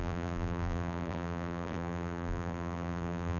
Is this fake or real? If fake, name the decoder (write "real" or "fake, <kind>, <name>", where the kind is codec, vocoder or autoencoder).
fake, vocoder, BigVGAN v2